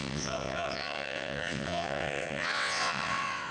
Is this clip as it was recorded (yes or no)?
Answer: no